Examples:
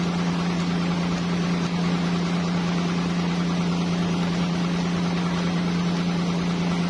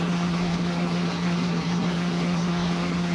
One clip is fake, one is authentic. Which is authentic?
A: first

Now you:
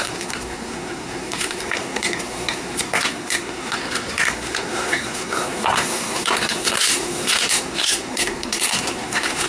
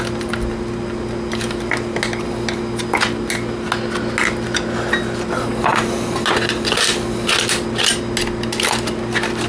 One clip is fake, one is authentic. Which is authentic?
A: second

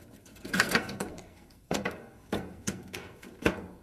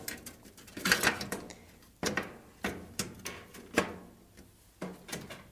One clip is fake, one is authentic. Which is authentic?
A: second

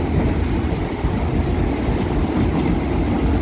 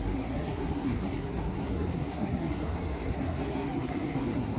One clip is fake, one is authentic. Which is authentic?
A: first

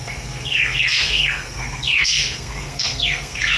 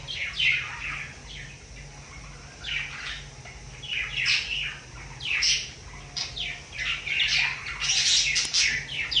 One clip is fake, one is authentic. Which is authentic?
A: second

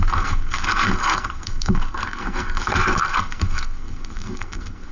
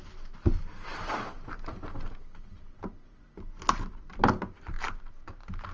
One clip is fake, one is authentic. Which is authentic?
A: second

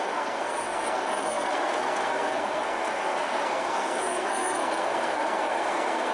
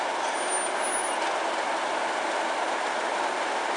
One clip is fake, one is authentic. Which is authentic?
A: second